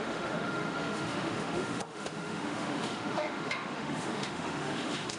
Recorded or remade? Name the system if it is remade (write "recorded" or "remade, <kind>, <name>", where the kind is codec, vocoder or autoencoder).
remade, autoencoder, DAC-VAE